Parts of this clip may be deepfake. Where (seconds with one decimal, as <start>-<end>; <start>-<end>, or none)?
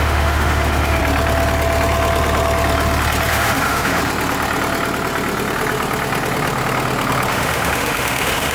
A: 0.0-1.0; 3.3-4.0; 7.3-8.5